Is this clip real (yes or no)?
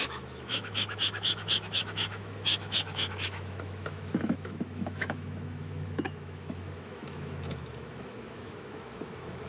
no